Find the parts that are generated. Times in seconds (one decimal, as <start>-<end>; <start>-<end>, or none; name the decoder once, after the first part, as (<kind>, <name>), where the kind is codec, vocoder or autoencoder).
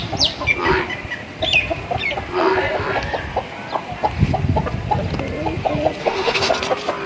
6.0-6.5 (autoencoder, DAC-VAE)